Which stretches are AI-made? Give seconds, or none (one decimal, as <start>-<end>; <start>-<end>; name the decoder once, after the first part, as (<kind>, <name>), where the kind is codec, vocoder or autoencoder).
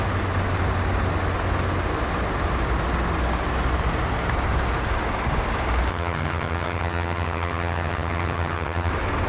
5.9-8.9 (vocoder, HiFi-GAN)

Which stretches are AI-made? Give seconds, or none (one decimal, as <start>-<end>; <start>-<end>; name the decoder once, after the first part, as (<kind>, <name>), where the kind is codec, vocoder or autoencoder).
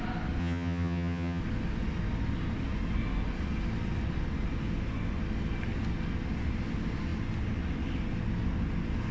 0.4-1.4 (vocoder, HiFi-GAN)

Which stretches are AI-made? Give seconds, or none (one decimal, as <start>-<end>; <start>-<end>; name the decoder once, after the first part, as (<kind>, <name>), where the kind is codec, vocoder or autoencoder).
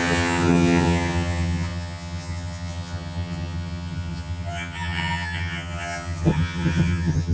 0.0-7.3 (vocoder, HiFi-GAN)